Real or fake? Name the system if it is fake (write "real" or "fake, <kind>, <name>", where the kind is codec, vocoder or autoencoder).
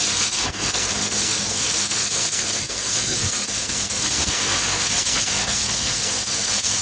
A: fake, codec, SNAC